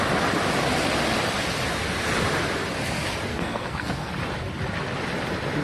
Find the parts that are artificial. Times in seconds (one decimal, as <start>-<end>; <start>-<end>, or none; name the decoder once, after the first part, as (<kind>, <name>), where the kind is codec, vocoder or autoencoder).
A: 3.3-4.1 (codec, SNAC)